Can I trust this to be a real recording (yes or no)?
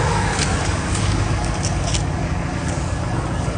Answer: no